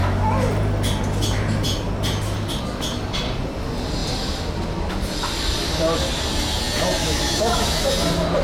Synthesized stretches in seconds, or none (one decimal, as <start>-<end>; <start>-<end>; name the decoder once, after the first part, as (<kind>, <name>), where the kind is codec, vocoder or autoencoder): 7.0-7.8 (autoencoder, DAC-VAE)